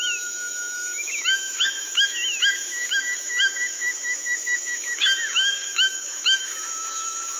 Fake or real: fake